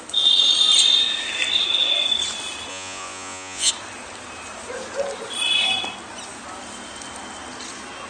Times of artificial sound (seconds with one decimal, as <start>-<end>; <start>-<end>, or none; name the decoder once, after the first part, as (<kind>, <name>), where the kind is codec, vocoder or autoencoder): 2.7-3.7 (vocoder, Vocos)